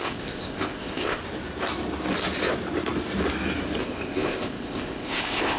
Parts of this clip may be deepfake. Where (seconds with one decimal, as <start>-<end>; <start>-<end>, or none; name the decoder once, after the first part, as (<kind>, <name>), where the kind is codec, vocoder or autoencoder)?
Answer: 0.0-1.2 (codec, ZipCodec); 3.8-5.6